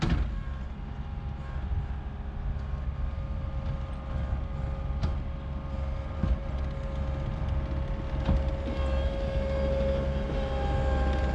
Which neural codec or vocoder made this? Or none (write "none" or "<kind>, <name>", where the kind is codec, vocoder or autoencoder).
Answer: none